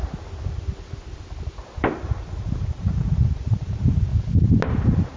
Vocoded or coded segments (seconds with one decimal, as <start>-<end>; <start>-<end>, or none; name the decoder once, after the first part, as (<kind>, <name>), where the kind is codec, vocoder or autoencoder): 1.8-4.1 (vocoder, BigVGAN v2); 4.7-5.2